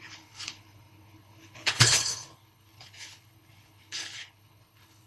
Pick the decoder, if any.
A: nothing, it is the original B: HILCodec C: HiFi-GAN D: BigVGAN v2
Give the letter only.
B